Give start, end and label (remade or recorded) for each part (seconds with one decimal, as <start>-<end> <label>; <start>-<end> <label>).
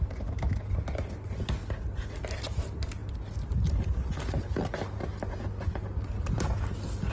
0.0-7.1 recorded